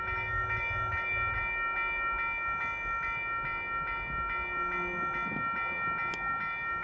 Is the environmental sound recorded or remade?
recorded